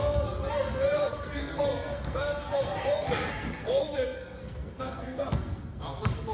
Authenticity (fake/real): fake